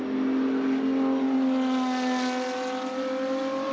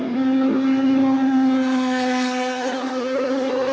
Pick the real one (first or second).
first